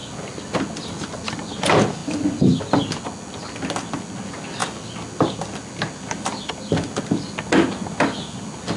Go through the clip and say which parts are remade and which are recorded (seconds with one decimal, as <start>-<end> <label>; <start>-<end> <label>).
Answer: 0.0-8.8 recorded